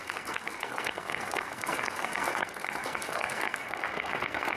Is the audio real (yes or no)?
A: no